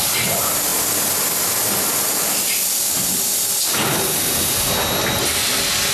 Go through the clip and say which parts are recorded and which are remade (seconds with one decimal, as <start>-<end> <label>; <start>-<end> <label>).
0.0-5.9 recorded